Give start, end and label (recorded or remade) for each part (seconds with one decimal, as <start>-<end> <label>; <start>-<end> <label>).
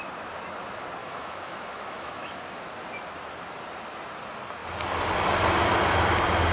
0.0-1.0 recorded; 1.0-2.4 remade; 2.4-6.5 recorded